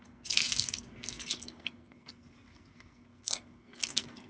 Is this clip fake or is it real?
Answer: fake